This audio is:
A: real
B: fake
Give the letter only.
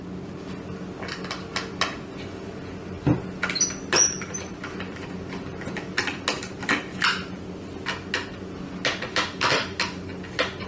A